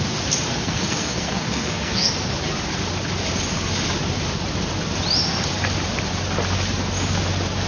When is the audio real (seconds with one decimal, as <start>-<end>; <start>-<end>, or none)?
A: 0.0-0.5; 2.1-7.7